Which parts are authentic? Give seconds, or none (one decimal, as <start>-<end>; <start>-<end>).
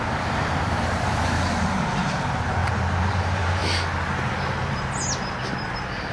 2.6-3.1; 3.6-6.1